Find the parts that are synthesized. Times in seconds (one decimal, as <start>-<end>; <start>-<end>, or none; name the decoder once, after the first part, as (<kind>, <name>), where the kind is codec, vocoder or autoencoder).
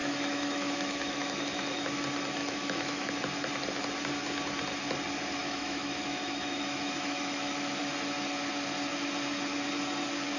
0.0-2.0 (autoencoder, DAC-VAE); 2.4-3.1; 5.4-7.8